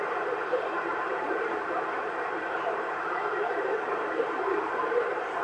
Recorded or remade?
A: remade